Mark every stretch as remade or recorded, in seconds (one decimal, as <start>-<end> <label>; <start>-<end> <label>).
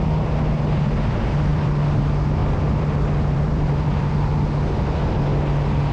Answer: 0.0-1.5 recorded; 1.5-2.0 remade; 2.0-2.4 recorded; 2.4-4.7 remade; 4.7-5.9 recorded